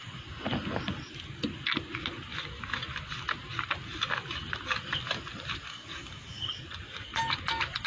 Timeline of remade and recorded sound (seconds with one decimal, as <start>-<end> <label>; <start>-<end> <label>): 0.0-5.7 recorded; 5.7-6.5 remade; 6.5-7.9 recorded